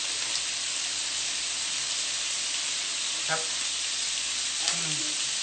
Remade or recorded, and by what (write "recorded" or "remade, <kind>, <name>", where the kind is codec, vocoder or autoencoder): recorded